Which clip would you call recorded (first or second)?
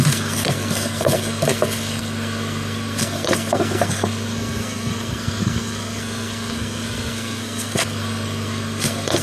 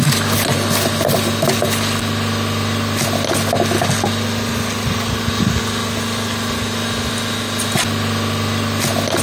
second